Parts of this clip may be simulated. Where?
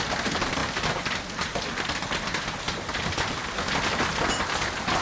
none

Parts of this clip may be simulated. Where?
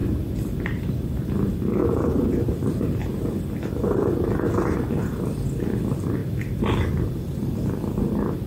0.0-1.3; 1.8-3.1